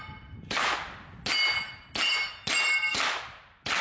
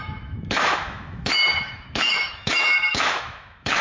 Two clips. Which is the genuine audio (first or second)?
first